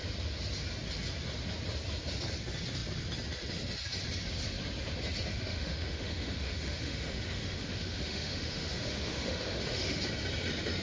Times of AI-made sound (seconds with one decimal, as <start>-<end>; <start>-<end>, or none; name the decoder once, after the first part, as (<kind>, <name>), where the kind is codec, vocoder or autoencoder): 5.3-10.0 (autoencoder, DAC-VAE)